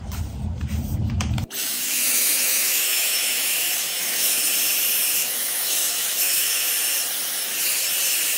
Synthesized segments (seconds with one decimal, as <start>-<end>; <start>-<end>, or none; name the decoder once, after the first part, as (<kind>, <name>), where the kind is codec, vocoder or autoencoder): 1.6-4.4 (autoencoder, DAC-VAE); 5.2-6.7